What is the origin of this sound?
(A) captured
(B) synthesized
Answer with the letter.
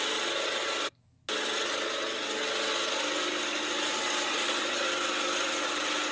A